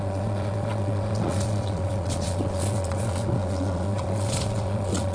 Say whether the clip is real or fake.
fake